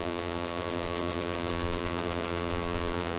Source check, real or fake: fake